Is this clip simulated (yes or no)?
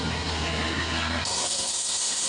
yes